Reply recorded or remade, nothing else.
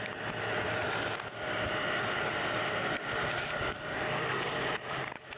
recorded